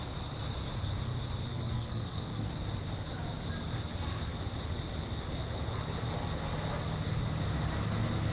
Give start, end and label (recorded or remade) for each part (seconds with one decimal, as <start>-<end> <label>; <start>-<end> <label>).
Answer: 0.0-1.5 recorded; 1.5-2.5 remade; 2.5-8.3 recorded